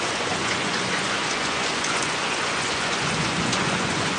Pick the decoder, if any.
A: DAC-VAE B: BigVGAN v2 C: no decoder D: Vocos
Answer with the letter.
D